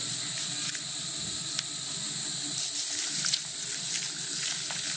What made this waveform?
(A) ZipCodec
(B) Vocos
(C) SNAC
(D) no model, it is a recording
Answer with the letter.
D